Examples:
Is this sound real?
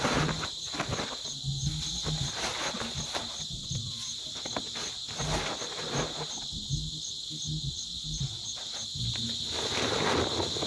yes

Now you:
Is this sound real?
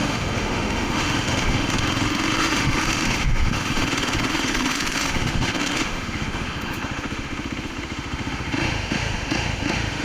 no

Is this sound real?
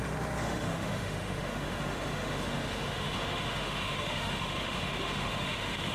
no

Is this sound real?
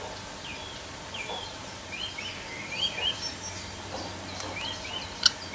yes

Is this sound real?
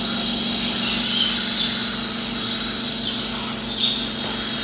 yes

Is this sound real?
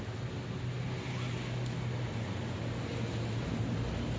yes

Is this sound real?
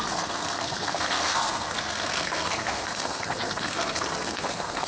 no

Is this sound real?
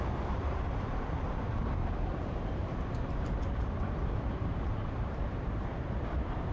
no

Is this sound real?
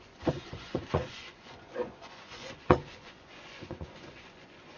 no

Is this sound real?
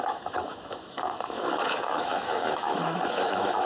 no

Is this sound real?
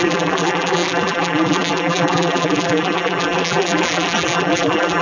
no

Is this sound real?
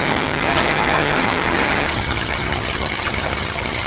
no